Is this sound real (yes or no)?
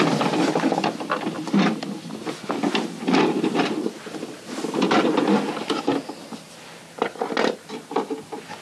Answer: yes